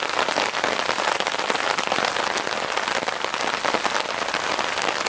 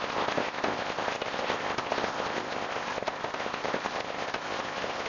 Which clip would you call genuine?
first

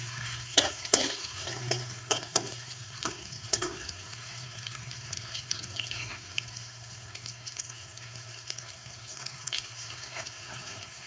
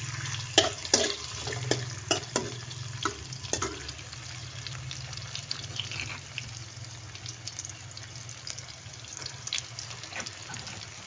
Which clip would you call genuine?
second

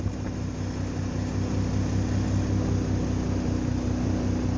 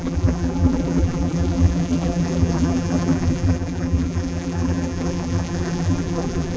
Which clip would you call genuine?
first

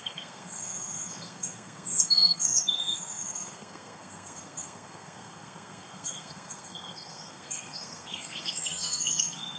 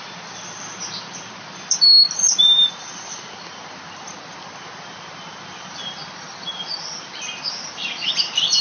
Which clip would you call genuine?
second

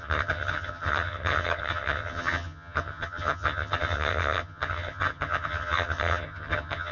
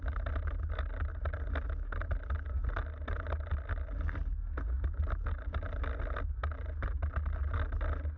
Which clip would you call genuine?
second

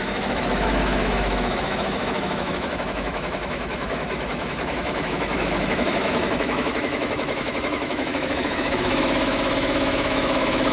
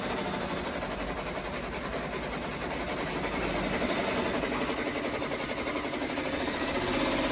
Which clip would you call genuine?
second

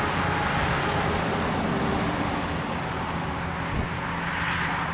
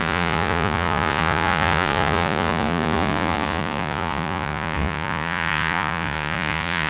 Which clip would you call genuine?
first